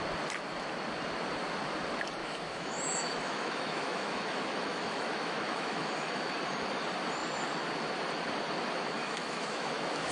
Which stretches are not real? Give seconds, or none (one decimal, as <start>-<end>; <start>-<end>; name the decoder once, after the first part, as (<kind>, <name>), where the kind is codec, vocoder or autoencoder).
2.2-6.3 (autoencoder, DAC-VAE); 9.0-10.1